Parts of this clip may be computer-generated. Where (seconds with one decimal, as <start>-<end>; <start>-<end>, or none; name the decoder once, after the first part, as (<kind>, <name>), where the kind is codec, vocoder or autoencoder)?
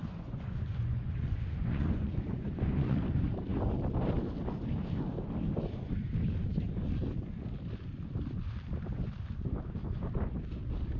0.0-3.0 (vocoder, Vocos)